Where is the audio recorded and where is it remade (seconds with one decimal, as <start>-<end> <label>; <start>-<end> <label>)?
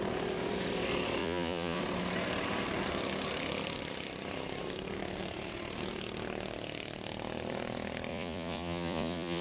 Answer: 0.0-1.2 recorded; 1.2-1.8 remade; 1.8-8.1 recorded; 8.1-9.4 remade